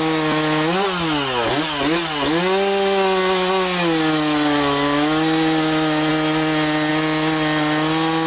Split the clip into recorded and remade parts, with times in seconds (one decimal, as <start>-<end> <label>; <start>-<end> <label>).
0.0-8.3 recorded